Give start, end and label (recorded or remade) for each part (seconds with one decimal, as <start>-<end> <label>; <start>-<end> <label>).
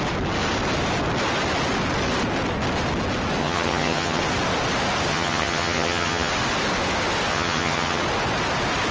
0.0-3.4 recorded; 3.4-4.2 remade; 4.2-5.1 recorded; 5.1-6.3 remade; 6.3-7.3 recorded; 7.3-8.0 remade; 8.0-8.9 recorded